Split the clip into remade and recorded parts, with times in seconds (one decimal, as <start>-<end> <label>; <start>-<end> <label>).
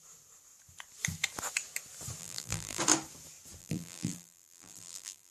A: 0.0-2.2 recorded; 2.2-2.8 remade; 2.8-3.6 recorded; 3.6-5.3 remade